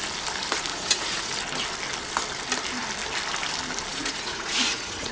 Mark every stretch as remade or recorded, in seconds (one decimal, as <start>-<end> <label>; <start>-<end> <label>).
0.0-0.7 recorded; 0.7-1.3 remade; 1.3-3.9 recorded; 3.9-5.1 remade